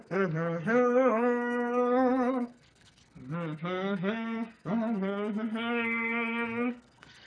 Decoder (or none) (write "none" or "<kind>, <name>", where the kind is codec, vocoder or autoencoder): codec, SNAC